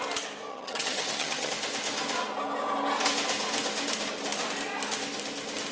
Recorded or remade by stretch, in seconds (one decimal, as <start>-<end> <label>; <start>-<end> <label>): 0.0-0.5 recorded; 0.5-1.5 remade; 1.5-5.7 recorded